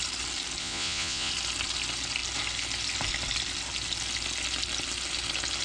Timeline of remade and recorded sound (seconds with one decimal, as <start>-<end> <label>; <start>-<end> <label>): 0.0-0.6 recorded; 0.6-1.3 remade; 1.3-5.6 recorded